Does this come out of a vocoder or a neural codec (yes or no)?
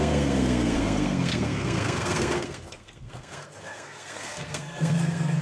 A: yes